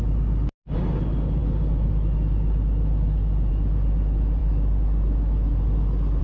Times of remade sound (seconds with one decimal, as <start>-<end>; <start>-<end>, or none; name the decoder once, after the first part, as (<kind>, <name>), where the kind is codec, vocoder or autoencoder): none